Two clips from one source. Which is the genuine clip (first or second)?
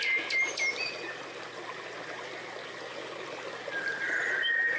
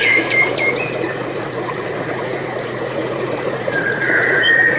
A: first